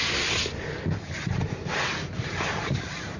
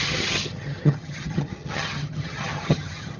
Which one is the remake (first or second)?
second